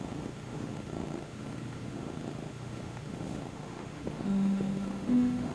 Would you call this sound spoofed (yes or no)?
yes